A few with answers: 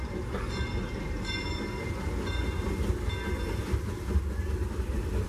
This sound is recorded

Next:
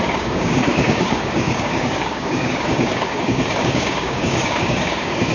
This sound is remade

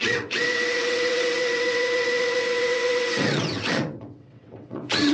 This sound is remade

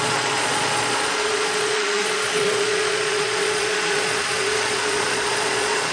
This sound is remade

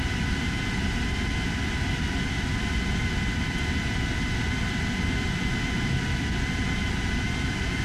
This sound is recorded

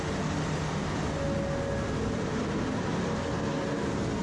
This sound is recorded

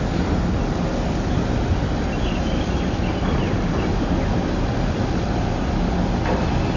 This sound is recorded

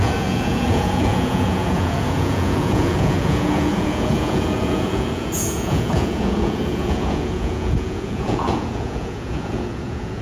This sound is remade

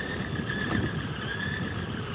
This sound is recorded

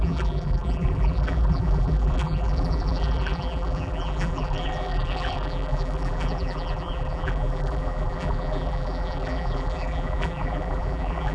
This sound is remade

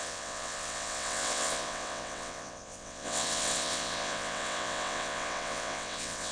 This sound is remade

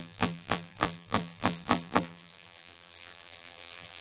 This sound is remade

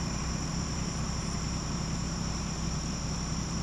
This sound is remade